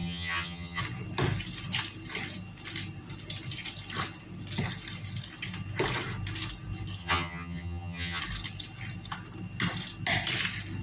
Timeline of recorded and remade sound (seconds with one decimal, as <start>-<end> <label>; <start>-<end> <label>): 0.0-0.8 remade; 0.8-7.0 recorded; 7.0-8.2 remade; 8.2-10.8 recorded